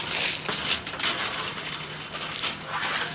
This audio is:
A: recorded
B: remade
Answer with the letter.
A